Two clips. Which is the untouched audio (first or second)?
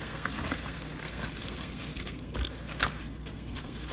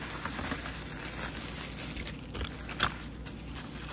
second